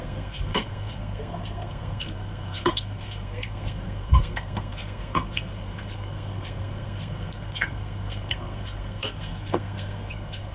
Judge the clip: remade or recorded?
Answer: remade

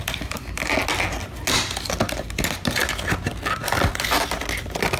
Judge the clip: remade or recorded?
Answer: recorded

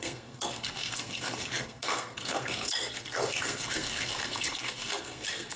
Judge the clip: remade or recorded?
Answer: remade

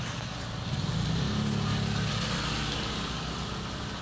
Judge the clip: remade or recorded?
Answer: recorded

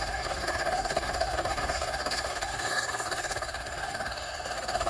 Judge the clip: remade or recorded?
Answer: remade